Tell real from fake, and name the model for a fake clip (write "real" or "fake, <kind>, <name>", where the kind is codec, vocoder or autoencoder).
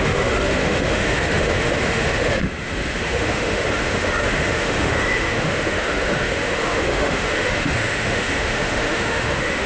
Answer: fake, autoencoder, DAC-VAE